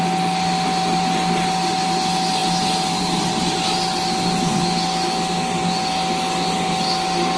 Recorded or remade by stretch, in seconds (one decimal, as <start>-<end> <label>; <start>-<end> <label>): 0.0-7.4 recorded